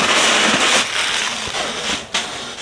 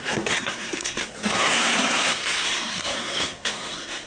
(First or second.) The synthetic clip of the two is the second